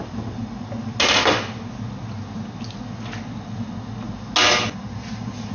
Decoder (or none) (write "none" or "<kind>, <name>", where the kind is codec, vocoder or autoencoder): none